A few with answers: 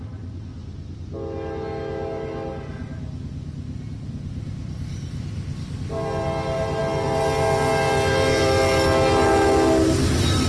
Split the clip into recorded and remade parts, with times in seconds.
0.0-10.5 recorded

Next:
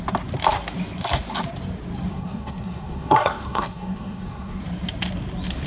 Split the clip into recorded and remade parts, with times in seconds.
0.0-2.1 recorded; 2.1-4.6 remade; 4.6-5.7 recorded

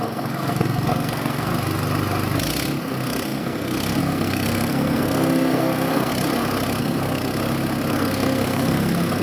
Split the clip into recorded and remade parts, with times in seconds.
0.0-1.5 remade; 1.5-2.8 recorded; 2.8-6.1 remade; 6.1-6.8 recorded; 6.8-7.2 remade; 7.2-7.9 recorded; 7.9-9.2 remade

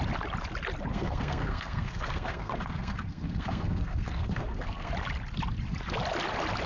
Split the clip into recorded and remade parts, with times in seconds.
0.0-0.9 recorded; 0.9-4.9 remade; 4.9-6.7 recorded

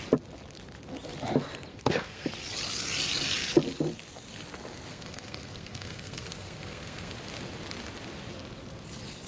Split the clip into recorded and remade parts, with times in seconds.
0.0-1.7 recorded; 1.7-2.3 remade; 2.3-4.9 recorded; 4.9-7.1 remade; 7.1-9.3 recorded

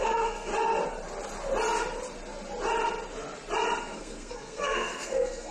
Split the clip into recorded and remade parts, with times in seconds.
0.0-0.5 remade; 0.5-3.8 recorded; 3.8-5.5 remade

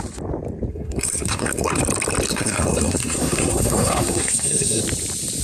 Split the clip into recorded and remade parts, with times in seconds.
0.0-0.7 recorded; 0.7-1.8 remade; 1.8-2.3 recorded; 2.3-4.8 remade; 4.8-5.4 recorded

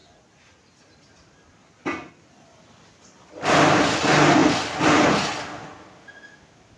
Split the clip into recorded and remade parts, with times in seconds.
0.0-6.8 recorded